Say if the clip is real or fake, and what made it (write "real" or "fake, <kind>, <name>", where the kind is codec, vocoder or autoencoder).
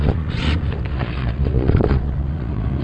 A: fake, vocoder, Vocos